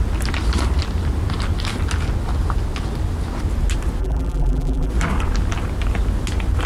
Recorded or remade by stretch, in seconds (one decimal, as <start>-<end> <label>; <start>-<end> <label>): 0.0-4.0 recorded; 4.0-4.9 remade; 4.9-6.7 recorded

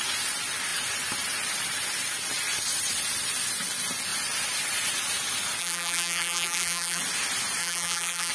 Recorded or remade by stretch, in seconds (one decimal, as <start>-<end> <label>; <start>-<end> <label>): 0.0-5.6 recorded; 5.6-7.0 remade; 7.0-7.6 recorded; 7.6-8.3 remade

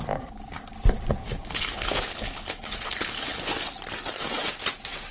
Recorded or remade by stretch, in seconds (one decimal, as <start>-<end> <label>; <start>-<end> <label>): 0.0-1.2 recorded; 1.2-3.4 remade; 3.4-5.1 recorded

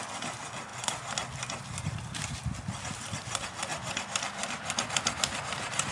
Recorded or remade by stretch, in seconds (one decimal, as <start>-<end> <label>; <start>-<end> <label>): 0.0-5.9 recorded